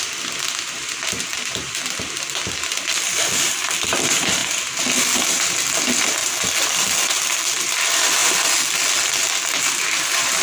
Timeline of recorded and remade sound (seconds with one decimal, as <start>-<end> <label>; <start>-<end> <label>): 0.0-1.3 recorded; 1.3-3.5 remade; 3.5-6.2 recorded; 6.2-7.7 remade; 7.7-10.4 recorded